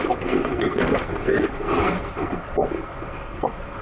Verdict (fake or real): fake